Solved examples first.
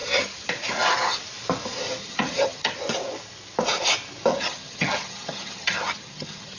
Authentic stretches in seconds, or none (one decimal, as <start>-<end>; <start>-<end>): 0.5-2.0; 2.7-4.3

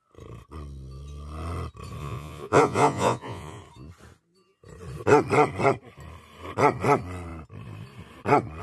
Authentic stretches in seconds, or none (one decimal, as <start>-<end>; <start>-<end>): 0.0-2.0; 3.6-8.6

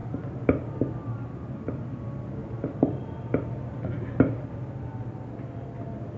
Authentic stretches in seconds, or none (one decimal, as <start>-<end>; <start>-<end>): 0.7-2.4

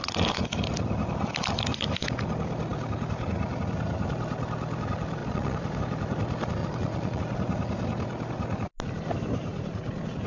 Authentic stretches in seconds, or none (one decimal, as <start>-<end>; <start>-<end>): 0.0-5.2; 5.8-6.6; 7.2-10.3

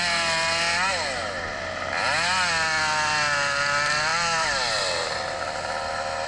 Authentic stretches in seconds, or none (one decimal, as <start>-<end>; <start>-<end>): 0.0-6.3

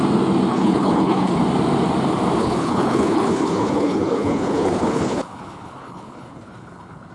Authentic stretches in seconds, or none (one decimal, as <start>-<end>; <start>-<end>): 0.0-0.5; 1.4-2.4